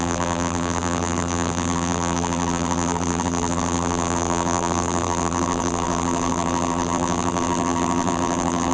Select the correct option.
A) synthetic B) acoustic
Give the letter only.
A